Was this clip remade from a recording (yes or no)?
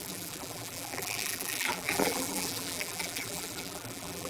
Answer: yes